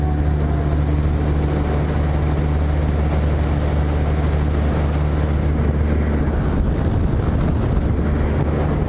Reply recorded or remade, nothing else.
recorded